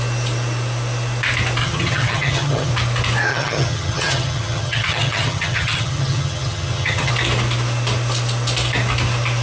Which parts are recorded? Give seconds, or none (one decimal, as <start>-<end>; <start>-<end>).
0.0-1.6; 2.7-3.3; 7.1-9.4